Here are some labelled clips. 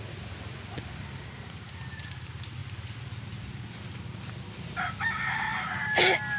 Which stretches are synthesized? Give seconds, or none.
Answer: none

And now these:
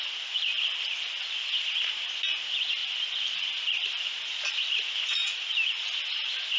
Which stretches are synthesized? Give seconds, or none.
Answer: 2.8-4.3; 5.2-5.8

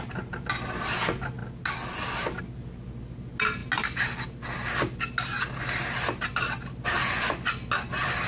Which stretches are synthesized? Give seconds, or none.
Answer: none

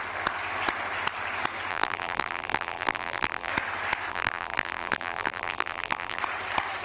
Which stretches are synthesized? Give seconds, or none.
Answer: 1.7-3.5; 4.1-6.2